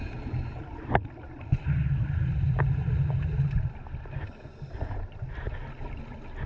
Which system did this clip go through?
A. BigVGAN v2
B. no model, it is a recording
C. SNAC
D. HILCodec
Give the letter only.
B